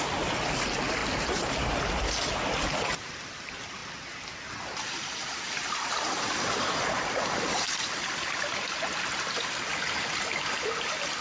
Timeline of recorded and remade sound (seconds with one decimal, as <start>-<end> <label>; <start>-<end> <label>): 0.0-11.2 recorded